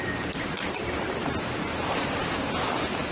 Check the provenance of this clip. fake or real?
real